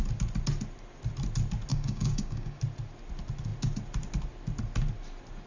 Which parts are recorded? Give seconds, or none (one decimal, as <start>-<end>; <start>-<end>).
0.0-1.7; 2.6-5.5